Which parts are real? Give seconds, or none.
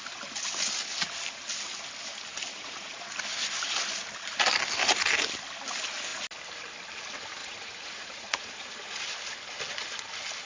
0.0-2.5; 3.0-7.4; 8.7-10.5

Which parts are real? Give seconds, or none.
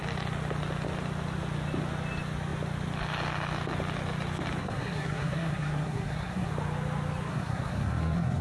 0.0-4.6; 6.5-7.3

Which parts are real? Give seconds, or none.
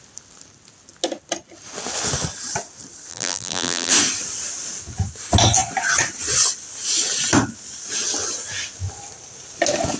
0.0-3.1; 3.9-10.0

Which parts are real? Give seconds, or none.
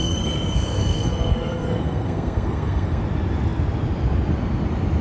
3.0-5.0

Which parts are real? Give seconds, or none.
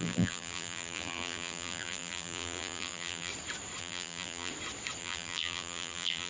3.3-3.8; 4.5-5.0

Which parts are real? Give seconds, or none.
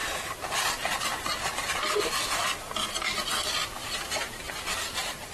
0.0-3.6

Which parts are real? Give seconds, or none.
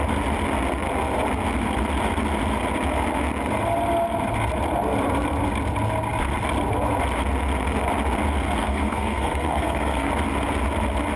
0.0-8.6; 10.1-11.2